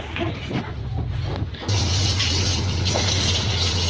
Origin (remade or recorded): remade